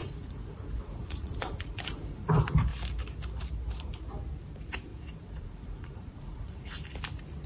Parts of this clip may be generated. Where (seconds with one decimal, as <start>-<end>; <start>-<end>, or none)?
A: 0.0-2.3; 4.9-6.8